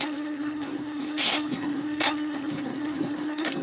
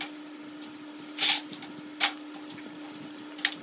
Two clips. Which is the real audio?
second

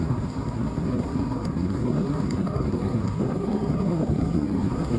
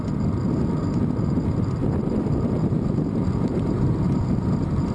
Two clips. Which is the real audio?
second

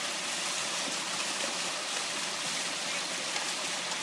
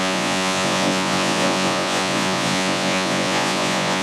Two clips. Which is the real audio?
first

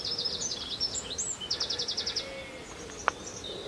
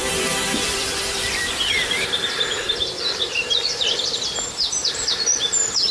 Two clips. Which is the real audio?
first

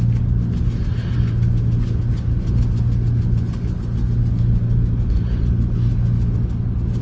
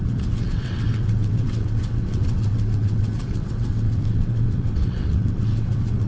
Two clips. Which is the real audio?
first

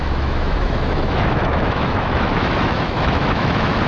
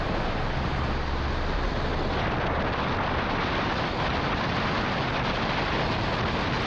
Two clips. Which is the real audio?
second